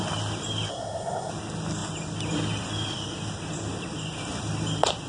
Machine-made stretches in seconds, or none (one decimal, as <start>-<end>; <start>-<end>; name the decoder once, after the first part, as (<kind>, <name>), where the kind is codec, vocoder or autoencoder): 0.7-1.3 (codec, SNAC)